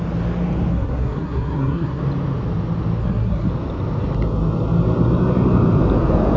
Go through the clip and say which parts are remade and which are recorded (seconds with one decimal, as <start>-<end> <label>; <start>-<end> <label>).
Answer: 0.0-0.7 recorded; 0.7-2.0 remade; 2.0-3.0 recorded; 3.0-3.5 remade; 3.5-6.4 recorded